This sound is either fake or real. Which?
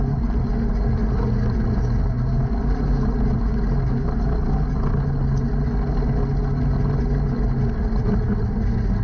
real